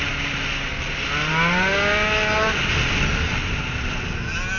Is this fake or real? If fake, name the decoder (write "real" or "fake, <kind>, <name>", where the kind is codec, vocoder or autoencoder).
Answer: real